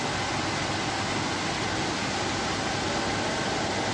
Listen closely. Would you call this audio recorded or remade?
recorded